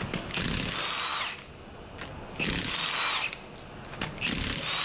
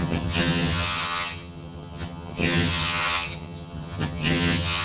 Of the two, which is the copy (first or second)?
second